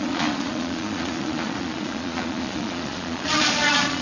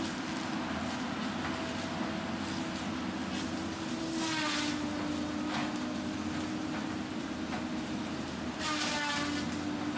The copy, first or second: first